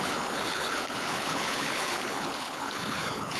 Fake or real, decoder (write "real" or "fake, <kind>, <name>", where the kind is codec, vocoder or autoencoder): fake, codec, HILCodec